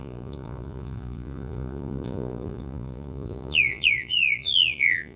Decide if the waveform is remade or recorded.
remade